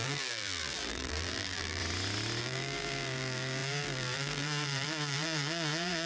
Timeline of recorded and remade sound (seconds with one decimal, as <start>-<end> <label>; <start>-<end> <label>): 0.0-1.8 remade; 1.8-2.4 recorded; 2.4-6.1 remade